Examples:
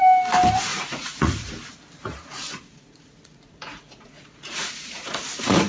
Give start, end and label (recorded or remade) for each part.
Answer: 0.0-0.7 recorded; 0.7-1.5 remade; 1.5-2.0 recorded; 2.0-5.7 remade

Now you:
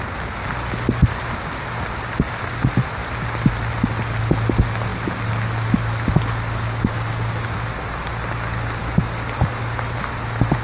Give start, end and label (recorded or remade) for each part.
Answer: 0.0-10.6 recorded

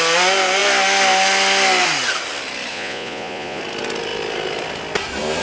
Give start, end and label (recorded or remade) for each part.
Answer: 0.0-2.7 recorded; 2.7-3.6 remade; 3.6-5.4 recorded

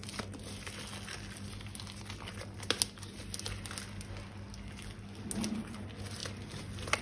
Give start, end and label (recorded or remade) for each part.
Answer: 0.0-7.0 recorded

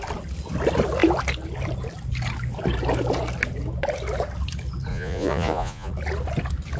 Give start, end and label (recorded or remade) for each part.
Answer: 0.0-4.9 recorded; 4.9-5.9 remade; 5.9-6.8 recorded

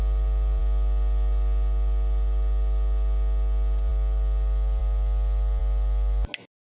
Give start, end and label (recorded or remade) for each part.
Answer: 0.0-6.7 recorded